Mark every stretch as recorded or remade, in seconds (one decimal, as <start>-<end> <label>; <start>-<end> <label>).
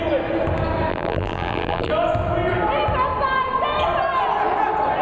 0.0-0.9 recorded; 0.9-1.9 remade; 1.9-5.0 recorded